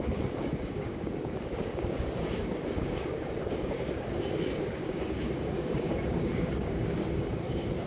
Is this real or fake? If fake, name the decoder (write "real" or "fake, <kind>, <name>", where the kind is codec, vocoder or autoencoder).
fake, codec, DAC